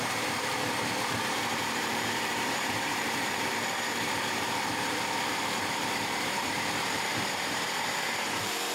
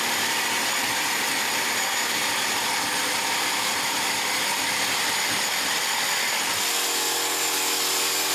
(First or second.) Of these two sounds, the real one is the second